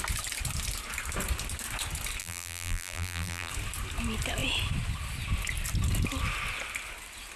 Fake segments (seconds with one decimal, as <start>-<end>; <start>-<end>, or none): 2.2-3.5